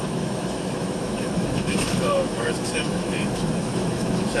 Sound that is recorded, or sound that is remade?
remade